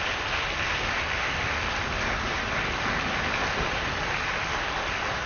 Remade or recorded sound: recorded